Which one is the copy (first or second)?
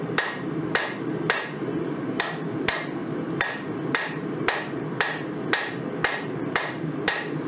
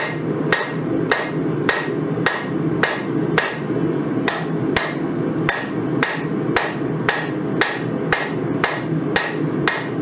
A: first